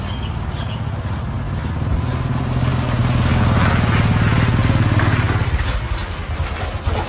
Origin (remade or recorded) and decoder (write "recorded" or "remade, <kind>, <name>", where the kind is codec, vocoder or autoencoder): recorded